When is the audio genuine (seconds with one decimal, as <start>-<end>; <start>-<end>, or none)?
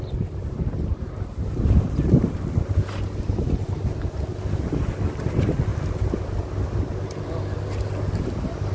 0.0-8.7